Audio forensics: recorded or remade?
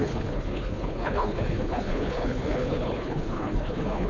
remade